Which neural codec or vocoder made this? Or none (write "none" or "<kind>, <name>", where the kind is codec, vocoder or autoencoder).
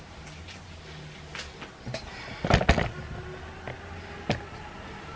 none